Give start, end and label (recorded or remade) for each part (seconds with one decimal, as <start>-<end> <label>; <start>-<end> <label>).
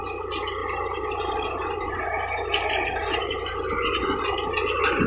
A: 0.0-0.6 recorded; 0.6-3.7 remade; 3.7-5.1 recorded